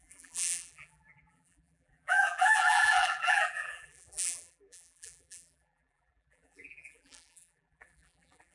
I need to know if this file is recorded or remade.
remade